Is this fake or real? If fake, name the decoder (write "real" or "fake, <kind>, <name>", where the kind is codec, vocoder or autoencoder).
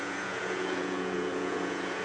fake, vocoder, Vocos